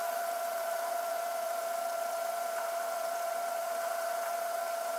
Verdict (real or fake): fake